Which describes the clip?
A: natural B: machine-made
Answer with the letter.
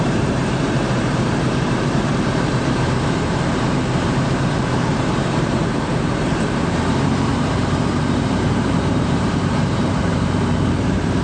B